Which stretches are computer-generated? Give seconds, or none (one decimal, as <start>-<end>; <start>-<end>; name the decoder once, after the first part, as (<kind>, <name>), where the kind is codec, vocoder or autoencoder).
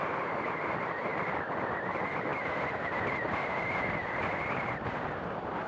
none